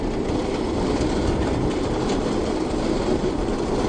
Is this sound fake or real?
real